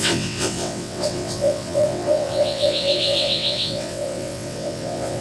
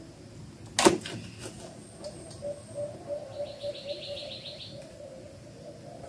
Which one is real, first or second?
second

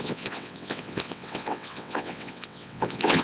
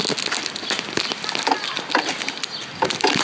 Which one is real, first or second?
second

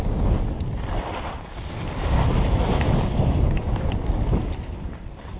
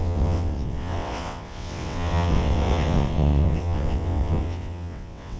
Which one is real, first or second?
first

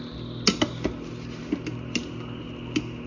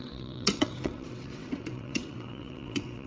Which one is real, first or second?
first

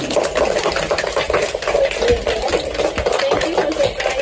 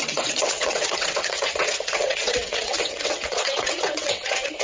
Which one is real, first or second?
first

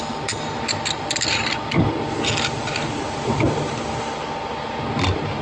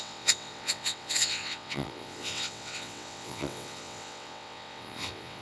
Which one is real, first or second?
first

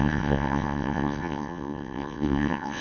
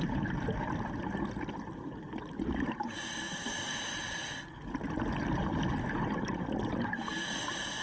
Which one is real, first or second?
second